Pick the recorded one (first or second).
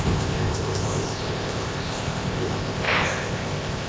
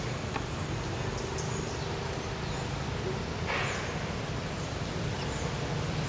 second